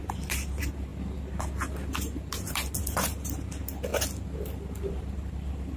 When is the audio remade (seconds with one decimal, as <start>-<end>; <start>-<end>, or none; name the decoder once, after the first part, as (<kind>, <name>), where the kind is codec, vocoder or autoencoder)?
0.0-3.9 (vocoder, BigVGAN v2); 4.9-5.8